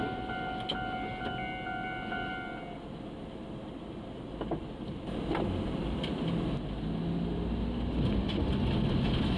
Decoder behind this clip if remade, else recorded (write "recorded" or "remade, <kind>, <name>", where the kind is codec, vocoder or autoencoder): recorded